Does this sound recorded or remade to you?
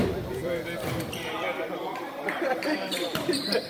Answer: remade